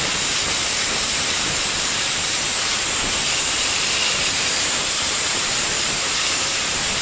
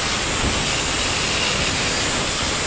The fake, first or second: first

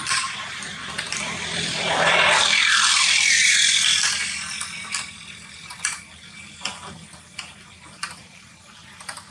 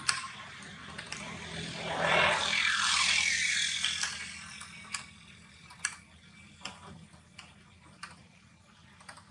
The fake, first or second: first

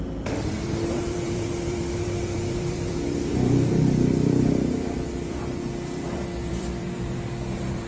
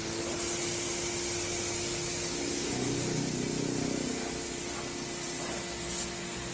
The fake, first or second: first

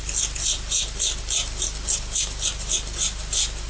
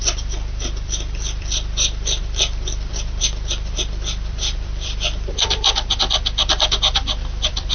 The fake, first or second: second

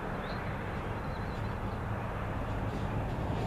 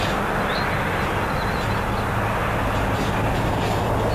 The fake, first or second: first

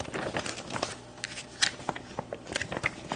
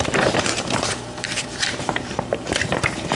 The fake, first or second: second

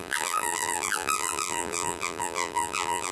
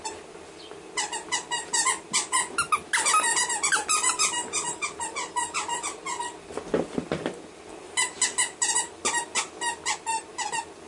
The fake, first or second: first